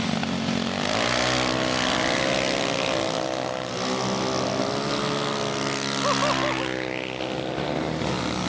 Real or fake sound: real